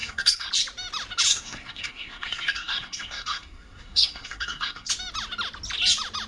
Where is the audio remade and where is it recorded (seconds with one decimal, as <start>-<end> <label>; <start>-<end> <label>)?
0.0-0.5 remade; 0.5-1.3 recorded; 1.3-4.9 remade; 4.9-6.3 recorded